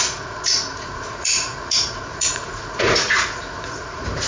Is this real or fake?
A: fake